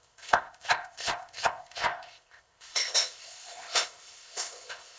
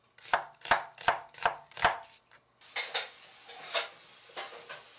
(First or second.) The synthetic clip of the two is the first